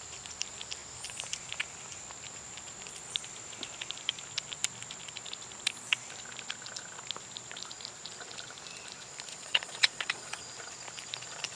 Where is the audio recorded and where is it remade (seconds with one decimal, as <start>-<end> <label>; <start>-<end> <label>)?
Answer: 0.0-9.3 recorded; 9.3-10.4 remade; 10.4-11.6 recorded